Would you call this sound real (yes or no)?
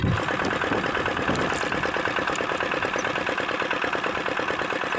yes